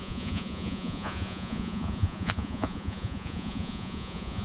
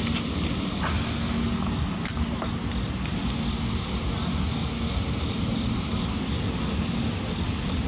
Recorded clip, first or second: second